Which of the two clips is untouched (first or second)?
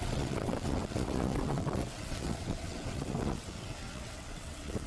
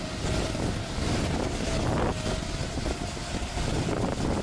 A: second